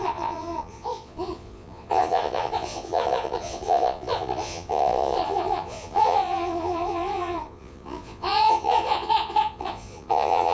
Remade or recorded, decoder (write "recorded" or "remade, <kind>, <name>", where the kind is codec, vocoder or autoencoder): remade, vocoder, Vocos